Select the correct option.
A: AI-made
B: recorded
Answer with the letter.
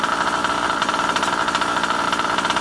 A